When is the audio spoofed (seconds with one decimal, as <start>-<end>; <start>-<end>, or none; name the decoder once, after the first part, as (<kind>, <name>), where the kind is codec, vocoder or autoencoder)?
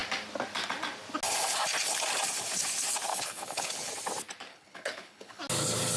3.1-3.9 (codec, HILCodec); 4.5-5.4